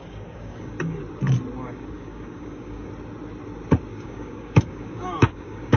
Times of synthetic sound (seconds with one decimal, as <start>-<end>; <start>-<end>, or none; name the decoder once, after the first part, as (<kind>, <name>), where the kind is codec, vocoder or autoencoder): 0.0-1.0 (codec, DAC); 1.6-2.9; 3.9-5.8